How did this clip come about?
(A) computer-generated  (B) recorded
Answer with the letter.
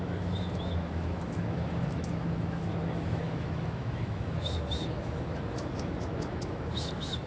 A